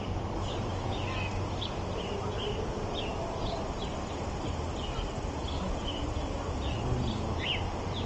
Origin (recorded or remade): recorded